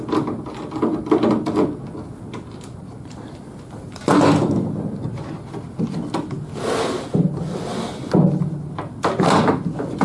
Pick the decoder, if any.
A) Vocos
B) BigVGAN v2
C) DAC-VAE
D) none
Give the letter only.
D